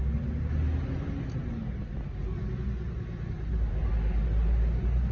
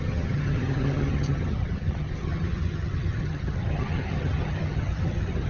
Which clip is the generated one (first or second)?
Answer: second